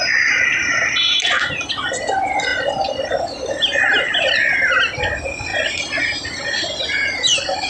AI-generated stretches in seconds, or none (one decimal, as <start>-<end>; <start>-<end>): none